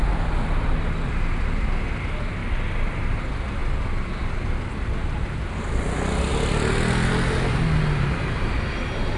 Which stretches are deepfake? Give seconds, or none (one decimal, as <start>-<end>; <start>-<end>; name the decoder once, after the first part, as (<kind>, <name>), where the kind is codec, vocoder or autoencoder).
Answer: none